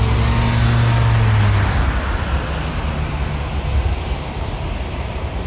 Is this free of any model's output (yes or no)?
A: yes